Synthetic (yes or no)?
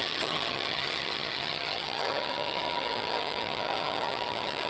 yes